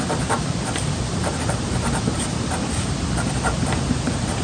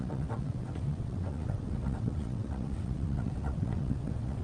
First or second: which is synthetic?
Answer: second